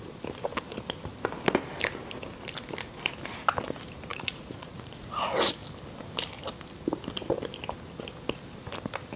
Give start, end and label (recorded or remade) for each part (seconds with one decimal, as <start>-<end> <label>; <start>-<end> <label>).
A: 0.0-4.1 recorded; 4.1-5.1 remade; 5.1-9.2 recorded